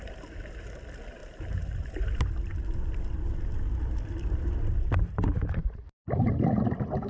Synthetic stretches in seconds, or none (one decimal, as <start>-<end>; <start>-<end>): 1.2-5.5